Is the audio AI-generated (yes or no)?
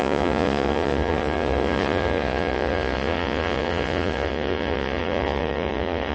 yes